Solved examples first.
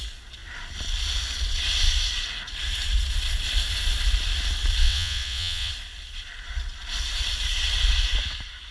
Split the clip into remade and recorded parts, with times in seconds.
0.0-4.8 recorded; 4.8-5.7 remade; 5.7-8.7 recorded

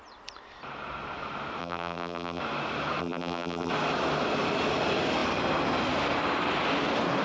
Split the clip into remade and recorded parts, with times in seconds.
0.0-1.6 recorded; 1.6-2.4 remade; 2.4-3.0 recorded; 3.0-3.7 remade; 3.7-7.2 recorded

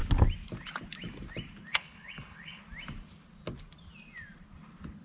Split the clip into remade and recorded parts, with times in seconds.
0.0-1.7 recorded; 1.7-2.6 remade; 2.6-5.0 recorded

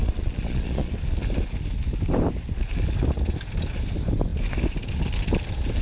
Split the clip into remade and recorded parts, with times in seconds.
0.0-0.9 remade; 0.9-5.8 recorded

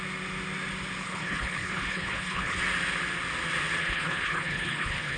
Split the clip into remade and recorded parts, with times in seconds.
0.0-1.0 recorded; 1.0-2.6 remade; 2.6-3.8 recorded; 3.8-5.2 remade

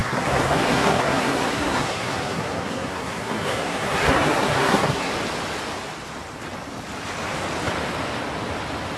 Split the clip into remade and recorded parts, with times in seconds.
0.0-5.1 remade; 5.1-9.0 recorded